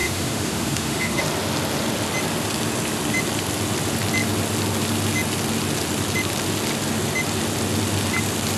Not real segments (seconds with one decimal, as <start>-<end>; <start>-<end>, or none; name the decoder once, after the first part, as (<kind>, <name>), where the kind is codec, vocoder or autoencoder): 0.0-1.2 (autoencoder, DAC-VAE)